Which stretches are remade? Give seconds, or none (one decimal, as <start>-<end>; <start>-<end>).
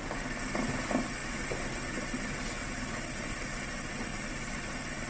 none